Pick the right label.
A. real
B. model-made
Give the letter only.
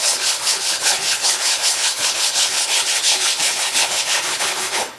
B